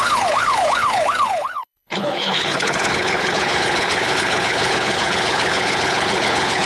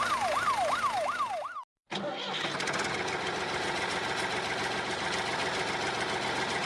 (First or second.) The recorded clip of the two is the second